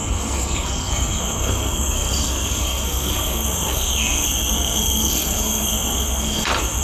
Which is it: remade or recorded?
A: remade